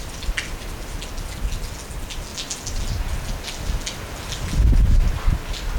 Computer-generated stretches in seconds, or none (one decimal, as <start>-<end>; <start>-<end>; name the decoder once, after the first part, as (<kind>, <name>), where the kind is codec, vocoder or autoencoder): none